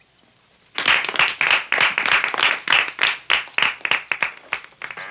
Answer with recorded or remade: recorded